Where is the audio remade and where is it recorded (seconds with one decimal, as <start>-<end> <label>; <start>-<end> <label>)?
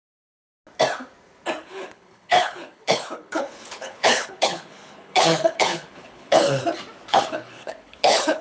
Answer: 0.0-1.6 recorded; 1.6-6.6 remade; 6.6-7.1 recorded; 7.1-8.4 remade